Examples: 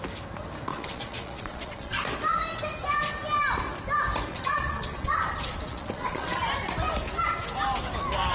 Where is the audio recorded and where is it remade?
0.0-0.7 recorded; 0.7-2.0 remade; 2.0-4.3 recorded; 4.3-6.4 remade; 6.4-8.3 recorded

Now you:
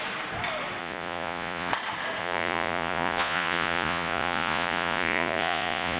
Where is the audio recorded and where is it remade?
0.0-0.8 recorded; 0.8-1.7 remade; 1.7-2.2 recorded; 2.2-6.0 remade